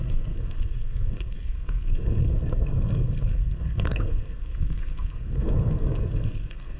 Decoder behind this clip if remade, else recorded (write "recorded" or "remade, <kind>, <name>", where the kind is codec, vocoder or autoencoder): remade, codec, SNAC